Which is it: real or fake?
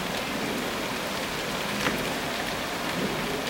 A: real